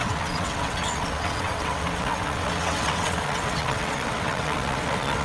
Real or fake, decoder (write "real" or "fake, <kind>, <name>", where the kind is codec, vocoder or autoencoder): fake, vocoder, WaveNeXt